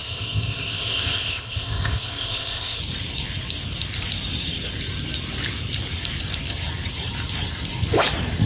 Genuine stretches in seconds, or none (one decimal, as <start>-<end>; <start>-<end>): 2.8-8.5